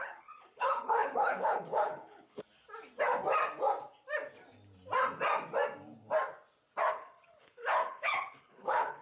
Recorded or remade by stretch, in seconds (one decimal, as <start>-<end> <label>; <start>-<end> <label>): 0.0-2.4 remade; 2.4-6.9 recorded; 6.9-9.0 remade